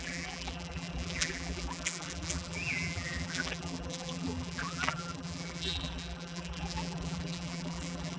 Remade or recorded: remade